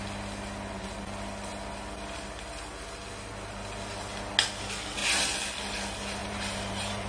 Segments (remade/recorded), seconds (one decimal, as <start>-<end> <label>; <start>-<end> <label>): 0.0-6.2 recorded; 6.2-7.1 remade